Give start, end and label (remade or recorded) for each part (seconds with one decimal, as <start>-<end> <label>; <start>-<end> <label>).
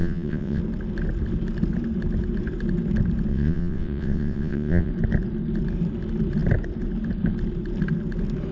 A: 0.0-0.6 remade; 0.6-3.3 recorded; 3.3-4.9 remade; 4.9-8.5 recorded